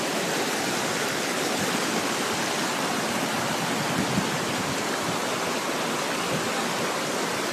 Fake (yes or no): no